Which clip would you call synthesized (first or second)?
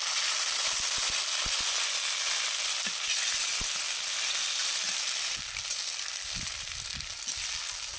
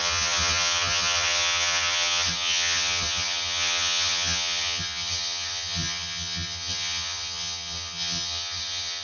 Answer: second